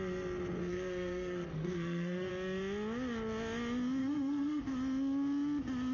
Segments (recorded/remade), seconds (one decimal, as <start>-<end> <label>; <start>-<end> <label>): 0.0-0.6 recorded; 0.6-2.3 remade; 2.3-4.0 recorded; 4.0-4.6 remade; 4.6-5.9 recorded